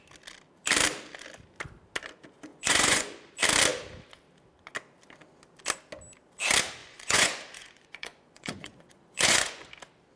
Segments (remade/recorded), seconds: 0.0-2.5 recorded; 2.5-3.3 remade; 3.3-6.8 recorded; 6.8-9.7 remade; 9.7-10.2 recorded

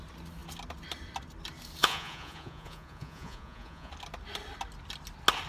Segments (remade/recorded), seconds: 0.0-1.8 recorded; 1.8-3.9 remade; 3.9-5.5 recorded

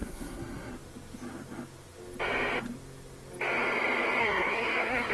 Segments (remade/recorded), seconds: 0.0-0.7 remade; 0.7-4.2 recorded; 4.2-5.1 remade